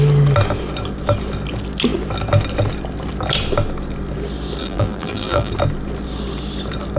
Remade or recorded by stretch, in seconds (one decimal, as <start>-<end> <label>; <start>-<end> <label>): 0.0-4.6 recorded; 4.6-5.5 remade; 5.5-7.0 recorded